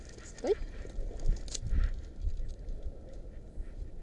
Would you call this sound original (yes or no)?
yes